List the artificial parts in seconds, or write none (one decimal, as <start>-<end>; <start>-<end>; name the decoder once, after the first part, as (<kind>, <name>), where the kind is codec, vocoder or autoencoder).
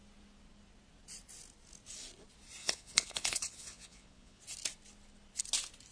2.6-4.4 (vocoder, Vocos)